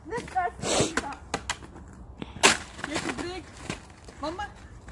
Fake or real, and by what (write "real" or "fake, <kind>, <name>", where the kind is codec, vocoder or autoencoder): real